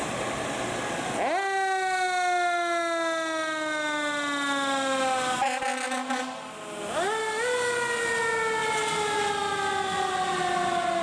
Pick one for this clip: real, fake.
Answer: real